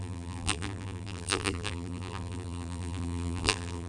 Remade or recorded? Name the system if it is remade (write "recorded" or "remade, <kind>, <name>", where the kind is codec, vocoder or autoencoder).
remade, vocoder, BigVGAN v2